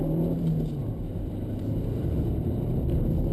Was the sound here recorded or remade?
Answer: remade